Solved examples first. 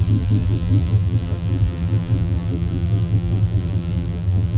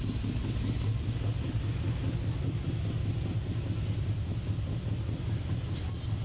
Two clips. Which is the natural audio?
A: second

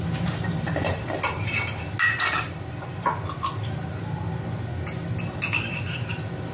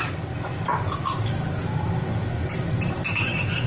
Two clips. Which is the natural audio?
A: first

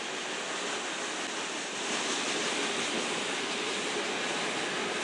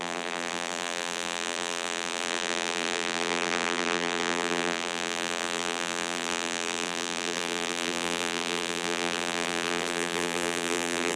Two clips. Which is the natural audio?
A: first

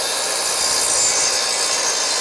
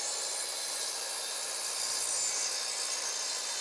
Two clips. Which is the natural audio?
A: first